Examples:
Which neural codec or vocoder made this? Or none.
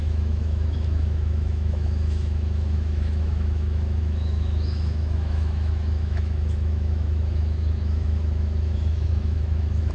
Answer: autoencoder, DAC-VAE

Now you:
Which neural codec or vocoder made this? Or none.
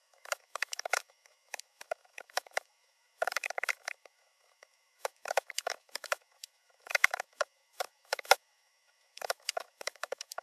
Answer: autoencoder, DAC-VAE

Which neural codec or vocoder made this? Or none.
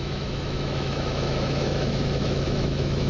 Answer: autoencoder, DAC-VAE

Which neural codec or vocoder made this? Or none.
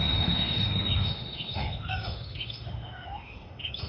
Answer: autoencoder, DAC-VAE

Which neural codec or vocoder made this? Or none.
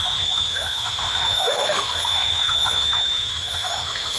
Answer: autoencoder, DAC-VAE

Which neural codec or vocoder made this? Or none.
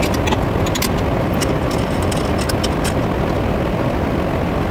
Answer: none